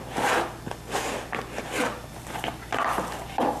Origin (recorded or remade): recorded